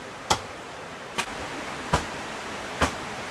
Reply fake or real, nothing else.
fake